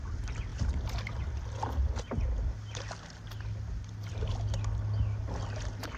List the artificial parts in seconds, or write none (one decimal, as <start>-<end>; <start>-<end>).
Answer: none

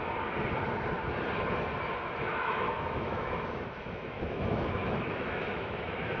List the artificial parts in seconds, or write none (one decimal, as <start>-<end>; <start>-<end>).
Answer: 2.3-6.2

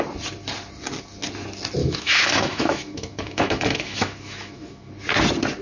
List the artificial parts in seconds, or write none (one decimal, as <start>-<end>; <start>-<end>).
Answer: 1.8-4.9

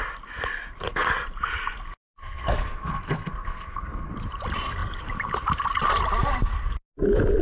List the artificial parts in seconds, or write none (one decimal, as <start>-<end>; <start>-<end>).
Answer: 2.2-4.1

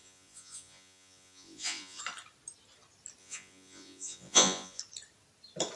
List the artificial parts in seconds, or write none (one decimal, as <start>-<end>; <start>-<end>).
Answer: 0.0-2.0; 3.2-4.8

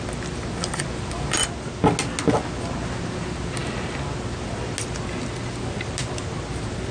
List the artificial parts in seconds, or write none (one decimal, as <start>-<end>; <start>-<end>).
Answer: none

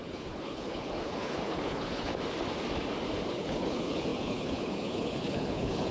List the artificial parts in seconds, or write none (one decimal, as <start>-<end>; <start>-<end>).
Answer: 0.0-2.1; 3.3-5.9

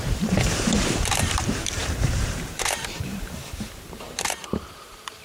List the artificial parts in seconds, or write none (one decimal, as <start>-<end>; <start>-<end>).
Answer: 0.0-5.2